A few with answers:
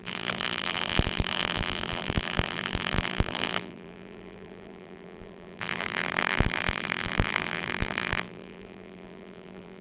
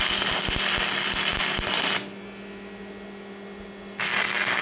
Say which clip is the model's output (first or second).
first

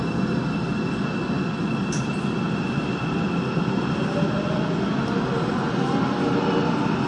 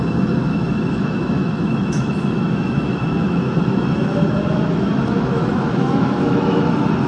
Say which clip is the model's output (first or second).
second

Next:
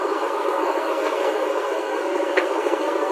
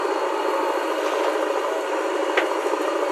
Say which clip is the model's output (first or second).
first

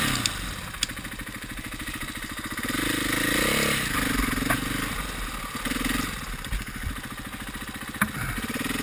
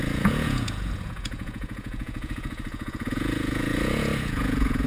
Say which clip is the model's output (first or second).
second